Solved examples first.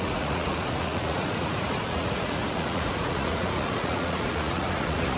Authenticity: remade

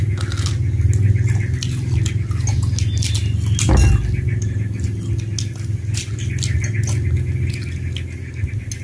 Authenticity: recorded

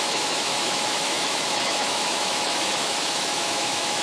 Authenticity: remade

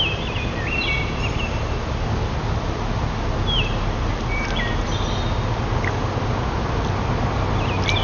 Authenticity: recorded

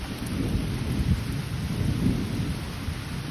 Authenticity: recorded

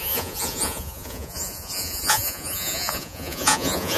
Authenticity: remade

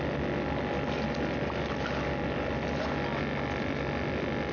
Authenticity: recorded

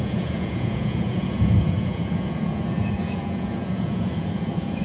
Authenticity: remade